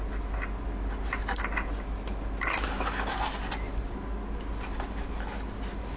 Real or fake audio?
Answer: real